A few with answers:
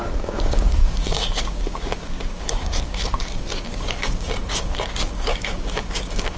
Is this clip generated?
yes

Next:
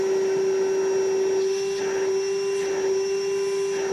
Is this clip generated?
no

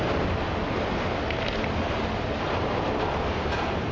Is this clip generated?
no